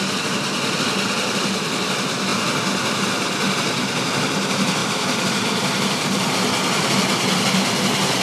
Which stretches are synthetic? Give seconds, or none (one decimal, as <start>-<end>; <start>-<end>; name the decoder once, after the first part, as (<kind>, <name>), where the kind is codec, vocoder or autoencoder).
4.8-6.3 (vocoder, BigVGAN v2)